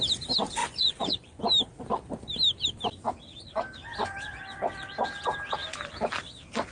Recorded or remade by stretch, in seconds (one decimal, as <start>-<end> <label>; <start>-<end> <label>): 0.0-0.6 recorded; 0.6-1.4 remade; 1.4-6.7 recorded